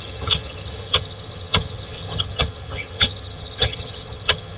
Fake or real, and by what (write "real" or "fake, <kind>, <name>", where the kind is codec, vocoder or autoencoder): fake, vocoder, HiFi-GAN